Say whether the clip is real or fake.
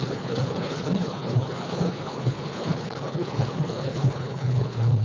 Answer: fake